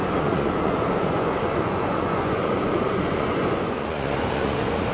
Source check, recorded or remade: remade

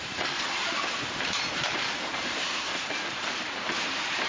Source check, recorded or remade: remade